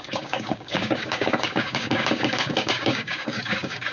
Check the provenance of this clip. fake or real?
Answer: fake